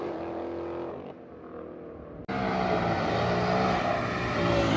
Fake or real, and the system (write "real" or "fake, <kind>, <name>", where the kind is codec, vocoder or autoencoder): real